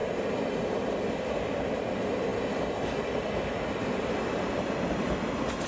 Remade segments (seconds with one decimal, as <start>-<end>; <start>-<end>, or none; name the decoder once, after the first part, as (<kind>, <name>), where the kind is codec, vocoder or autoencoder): none